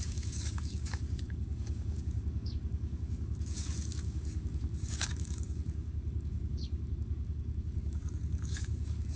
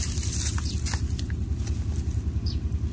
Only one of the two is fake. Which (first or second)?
first